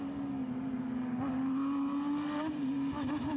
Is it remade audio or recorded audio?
recorded